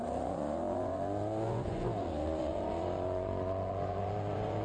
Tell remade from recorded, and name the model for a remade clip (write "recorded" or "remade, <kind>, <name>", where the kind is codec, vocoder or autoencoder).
remade, vocoder, Vocos